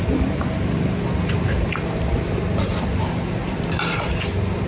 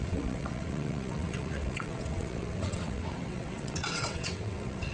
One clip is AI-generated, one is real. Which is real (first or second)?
first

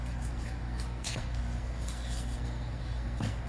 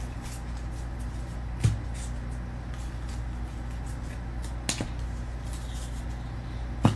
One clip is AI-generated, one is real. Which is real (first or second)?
second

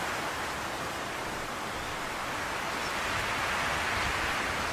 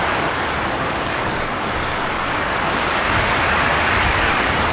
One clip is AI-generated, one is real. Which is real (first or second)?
first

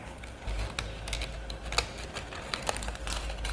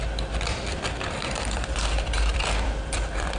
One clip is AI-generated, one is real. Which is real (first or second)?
first